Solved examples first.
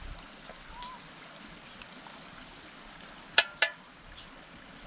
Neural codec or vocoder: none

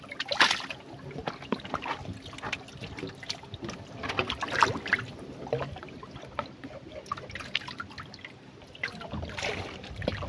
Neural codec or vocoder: none